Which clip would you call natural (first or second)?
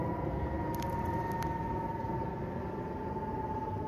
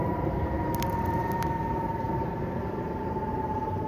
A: first